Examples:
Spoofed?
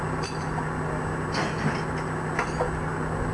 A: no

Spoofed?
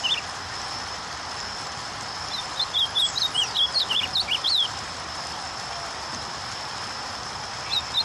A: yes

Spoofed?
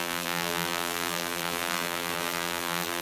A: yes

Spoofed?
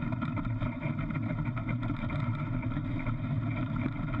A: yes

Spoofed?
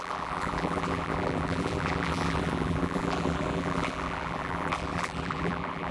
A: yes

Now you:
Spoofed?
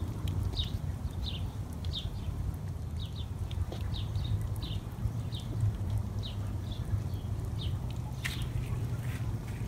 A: yes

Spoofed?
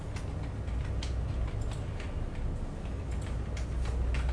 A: no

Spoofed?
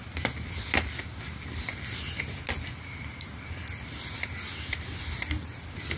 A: no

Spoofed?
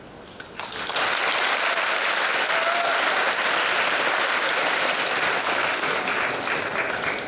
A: no